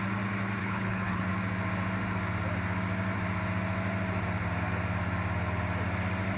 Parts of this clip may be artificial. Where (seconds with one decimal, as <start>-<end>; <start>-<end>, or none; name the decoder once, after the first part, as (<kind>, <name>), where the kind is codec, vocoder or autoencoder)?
0.6-1.3 (codec, HILCodec)